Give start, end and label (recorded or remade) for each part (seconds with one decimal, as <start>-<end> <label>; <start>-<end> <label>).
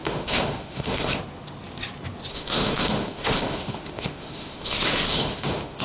0.0-1.2 remade; 1.2-2.3 recorded; 2.3-5.8 remade